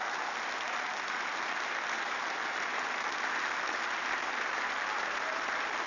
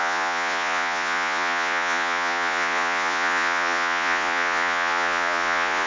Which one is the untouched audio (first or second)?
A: first